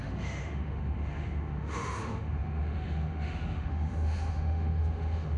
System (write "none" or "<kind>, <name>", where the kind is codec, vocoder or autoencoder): autoencoder, DAC-VAE